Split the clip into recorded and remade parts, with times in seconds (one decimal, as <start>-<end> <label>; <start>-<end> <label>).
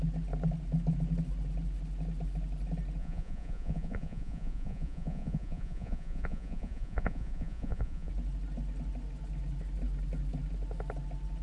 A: 0.0-3.0 recorded; 3.0-8.1 remade; 8.1-11.4 recorded